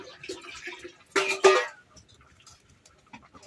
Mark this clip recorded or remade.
recorded